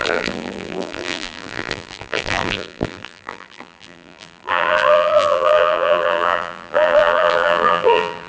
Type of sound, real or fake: fake